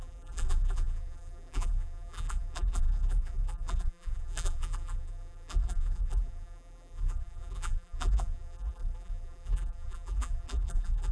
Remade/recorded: remade